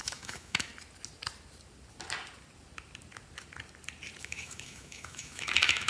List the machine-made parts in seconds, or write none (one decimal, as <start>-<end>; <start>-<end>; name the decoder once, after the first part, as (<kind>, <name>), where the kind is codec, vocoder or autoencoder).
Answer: 0.0-0.7 (autoencoder, DAC-VAE); 4.2-5.9